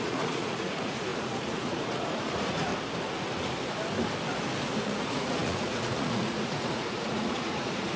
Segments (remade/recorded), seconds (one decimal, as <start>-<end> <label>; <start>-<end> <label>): 0.0-2.7 remade; 2.7-4.8 recorded; 4.8-8.0 remade